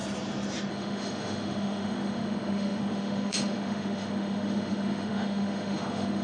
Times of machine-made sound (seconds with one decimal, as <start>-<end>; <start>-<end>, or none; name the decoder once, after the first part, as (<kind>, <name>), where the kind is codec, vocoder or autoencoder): 0.7-6.2 (autoencoder, DAC-VAE)